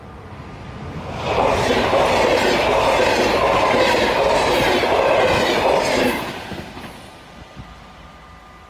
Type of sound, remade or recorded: recorded